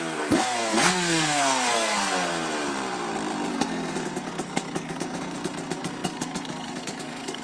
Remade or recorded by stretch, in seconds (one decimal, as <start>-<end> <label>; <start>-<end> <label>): 0.0-2.3 remade; 2.3-3.5 recorded; 3.5-7.4 remade